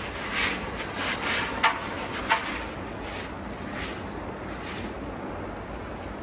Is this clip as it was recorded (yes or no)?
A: yes